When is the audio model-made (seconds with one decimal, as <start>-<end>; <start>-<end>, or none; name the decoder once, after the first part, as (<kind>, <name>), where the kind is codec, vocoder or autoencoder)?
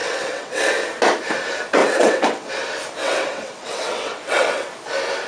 0.0-0.7 (vocoder, WaveNeXt); 1.8-2.5; 3.0-4.7